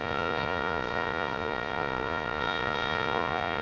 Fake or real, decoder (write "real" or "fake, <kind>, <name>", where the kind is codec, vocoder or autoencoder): fake, vocoder, Vocos